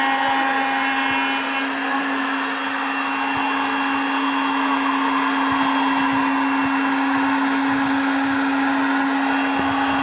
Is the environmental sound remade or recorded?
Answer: recorded